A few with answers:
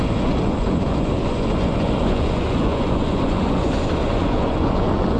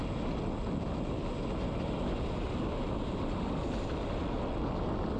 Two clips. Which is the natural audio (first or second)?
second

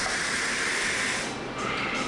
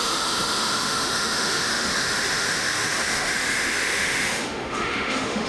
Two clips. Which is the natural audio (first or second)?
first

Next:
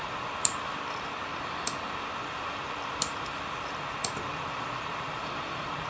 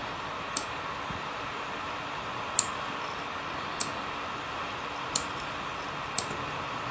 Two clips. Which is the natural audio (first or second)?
second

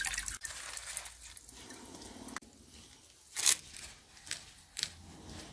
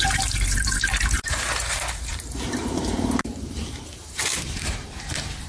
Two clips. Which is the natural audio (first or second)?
first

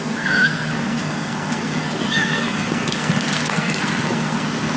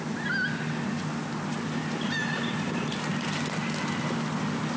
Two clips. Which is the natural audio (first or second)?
second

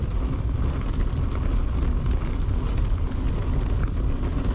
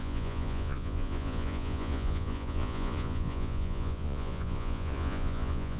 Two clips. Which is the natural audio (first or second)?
first